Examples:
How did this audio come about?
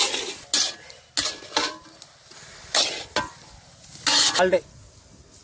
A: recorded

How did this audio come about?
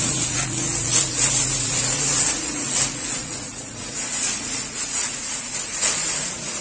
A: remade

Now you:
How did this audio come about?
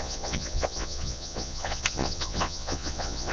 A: remade